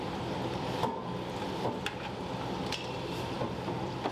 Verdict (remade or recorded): remade